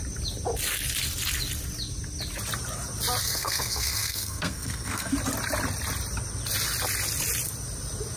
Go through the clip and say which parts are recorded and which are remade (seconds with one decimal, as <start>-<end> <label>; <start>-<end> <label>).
0.0-3.2 recorded; 3.2-5.1 remade; 5.1-8.2 recorded